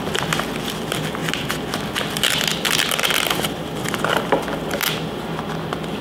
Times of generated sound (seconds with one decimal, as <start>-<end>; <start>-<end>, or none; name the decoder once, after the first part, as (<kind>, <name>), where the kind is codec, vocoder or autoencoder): none